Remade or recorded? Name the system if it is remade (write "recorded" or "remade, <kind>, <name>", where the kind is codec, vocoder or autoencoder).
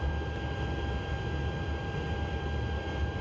recorded